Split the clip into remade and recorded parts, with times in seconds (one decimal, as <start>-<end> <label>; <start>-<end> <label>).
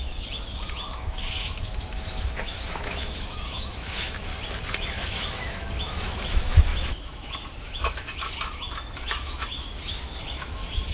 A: 0.0-4.3 remade; 4.3-4.8 recorded; 4.8-10.9 remade